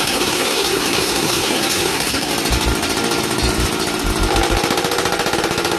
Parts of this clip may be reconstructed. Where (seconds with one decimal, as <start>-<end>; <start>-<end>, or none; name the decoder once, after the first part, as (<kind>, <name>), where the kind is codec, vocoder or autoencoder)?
0.0-2.3 (codec, SNAC)